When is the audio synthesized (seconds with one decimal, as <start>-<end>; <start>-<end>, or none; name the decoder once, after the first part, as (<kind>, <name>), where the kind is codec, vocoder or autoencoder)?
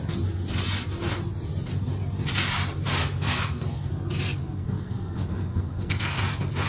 3.0-3.9 (codec, SNAC); 4.4-6.2